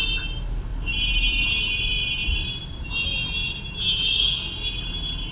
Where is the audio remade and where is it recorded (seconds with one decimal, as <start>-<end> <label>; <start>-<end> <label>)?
0.0-0.7 recorded; 0.7-1.7 remade; 1.7-2.2 recorded; 2.2-4.2 remade; 4.2-5.3 recorded